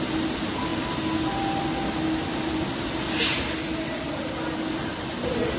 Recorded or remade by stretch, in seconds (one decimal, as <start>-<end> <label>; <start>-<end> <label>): 0.0-4.9 recorded; 4.9-5.6 remade